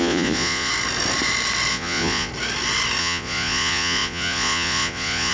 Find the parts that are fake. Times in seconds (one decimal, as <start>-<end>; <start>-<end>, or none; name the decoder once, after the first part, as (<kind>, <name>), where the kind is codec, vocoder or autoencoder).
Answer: 0.0-0.7 (vocoder, Vocos); 1.7-2.3; 3.0-5.3